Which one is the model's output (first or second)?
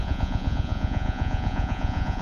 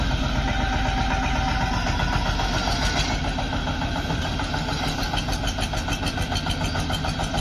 first